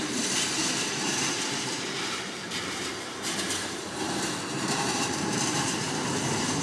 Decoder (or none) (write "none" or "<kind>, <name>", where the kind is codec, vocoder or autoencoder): vocoder, BigVGAN v2